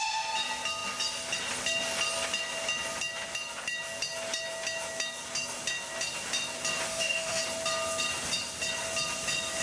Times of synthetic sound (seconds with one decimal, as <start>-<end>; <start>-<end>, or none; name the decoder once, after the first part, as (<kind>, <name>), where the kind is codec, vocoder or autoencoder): 6.9-7.4 (autoencoder, DAC-VAE)